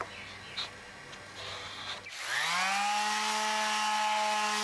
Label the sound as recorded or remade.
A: recorded